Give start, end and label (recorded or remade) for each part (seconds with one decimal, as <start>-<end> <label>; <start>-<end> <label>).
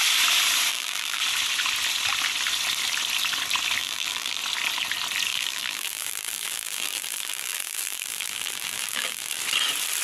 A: 0.0-0.7 recorded; 0.7-1.2 remade; 1.2-3.8 recorded; 3.8-4.4 remade; 4.4-5.3 recorded; 5.3-9.4 remade; 9.4-10.0 recorded